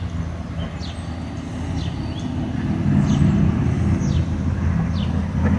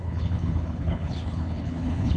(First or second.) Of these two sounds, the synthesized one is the second